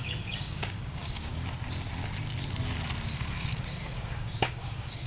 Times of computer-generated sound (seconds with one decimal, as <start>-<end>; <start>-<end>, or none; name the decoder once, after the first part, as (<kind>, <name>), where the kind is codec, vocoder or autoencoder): 0.0-1.3 (codec, DAC); 3.7-5.1